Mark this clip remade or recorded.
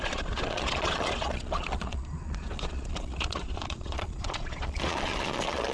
remade